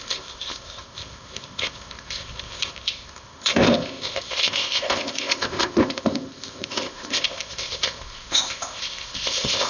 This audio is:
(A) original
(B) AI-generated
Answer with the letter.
B